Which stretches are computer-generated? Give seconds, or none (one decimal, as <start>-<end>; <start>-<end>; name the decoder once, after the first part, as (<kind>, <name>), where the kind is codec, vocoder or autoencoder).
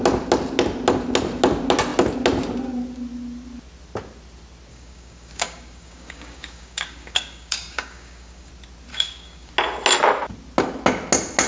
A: 4.7-8.5 (codec, DAC); 8.9-9.5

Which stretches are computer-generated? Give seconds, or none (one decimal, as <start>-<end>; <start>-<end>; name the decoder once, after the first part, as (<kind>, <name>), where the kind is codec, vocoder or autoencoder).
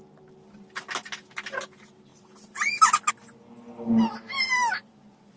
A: none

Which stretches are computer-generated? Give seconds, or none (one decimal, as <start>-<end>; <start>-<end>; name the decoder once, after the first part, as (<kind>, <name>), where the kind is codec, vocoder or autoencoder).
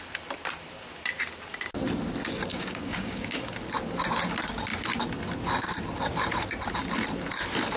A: 2.5-3.5 (codec, DAC)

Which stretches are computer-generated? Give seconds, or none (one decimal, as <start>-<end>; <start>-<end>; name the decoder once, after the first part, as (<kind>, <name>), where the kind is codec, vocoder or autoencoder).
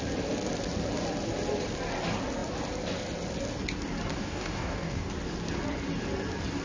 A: 4.1-5.1 (codec, DAC)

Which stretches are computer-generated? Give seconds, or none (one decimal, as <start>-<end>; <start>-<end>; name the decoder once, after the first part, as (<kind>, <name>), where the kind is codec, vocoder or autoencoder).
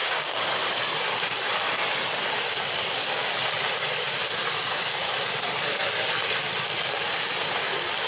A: 0.0-0.5 (codec, DAC)